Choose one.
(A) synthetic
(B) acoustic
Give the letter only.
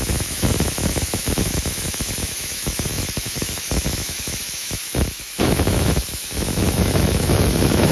A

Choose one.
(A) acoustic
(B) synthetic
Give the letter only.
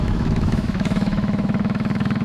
B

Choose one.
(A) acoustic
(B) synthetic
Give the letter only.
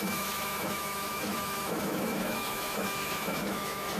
B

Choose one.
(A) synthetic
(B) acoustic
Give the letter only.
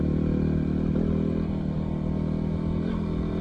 B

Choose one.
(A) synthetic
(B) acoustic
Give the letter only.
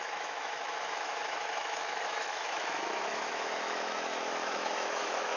A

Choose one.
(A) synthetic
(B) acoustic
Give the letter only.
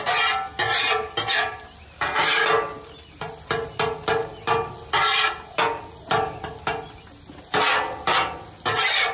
B